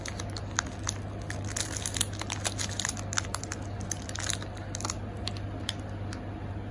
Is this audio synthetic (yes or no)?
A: no